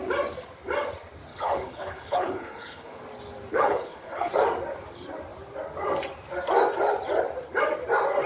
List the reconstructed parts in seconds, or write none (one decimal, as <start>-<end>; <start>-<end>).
1.3-3.0; 3.5-4.3